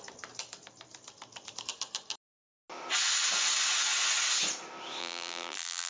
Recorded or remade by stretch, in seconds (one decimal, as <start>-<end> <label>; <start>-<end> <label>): 0.0-5.0 recorded; 5.0-5.9 remade